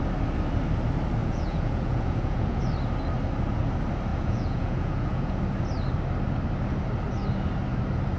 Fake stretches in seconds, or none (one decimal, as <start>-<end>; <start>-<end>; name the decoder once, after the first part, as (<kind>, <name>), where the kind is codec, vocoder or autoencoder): 1.2-2.6 (vocoder, Vocos); 4.1-5.4

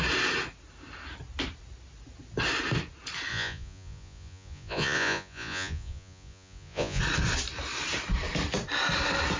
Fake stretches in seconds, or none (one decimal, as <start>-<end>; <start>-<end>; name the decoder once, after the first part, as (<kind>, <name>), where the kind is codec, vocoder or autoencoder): 3.3-7.0 (vocoder, Vocos)